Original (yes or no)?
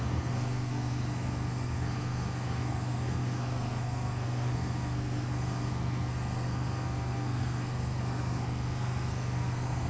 no